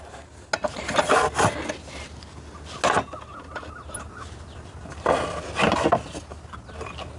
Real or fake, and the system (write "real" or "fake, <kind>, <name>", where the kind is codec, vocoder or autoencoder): real